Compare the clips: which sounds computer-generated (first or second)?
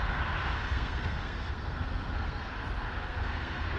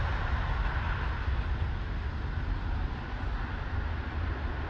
first